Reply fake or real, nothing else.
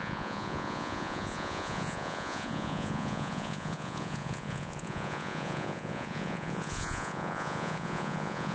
fake